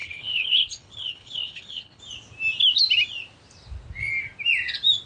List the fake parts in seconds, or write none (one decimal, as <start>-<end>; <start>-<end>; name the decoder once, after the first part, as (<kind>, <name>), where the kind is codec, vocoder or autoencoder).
0.0-2.0 (codec, HILCodec)